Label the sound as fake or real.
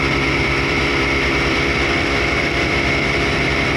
fake